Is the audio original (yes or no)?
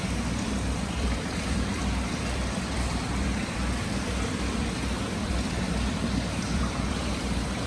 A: no